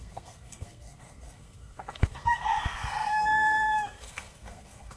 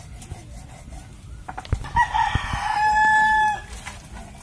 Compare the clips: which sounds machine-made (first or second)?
first